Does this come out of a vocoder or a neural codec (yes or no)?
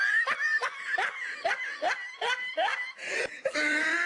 no